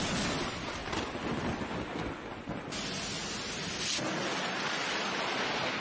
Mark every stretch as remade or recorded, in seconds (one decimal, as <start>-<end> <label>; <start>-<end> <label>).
0.0-5.8 recorded